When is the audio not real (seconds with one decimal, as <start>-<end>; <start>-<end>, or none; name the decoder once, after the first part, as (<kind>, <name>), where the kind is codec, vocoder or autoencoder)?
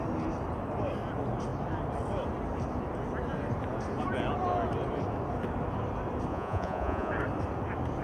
6.3-7.1 (vocoder, Vocos)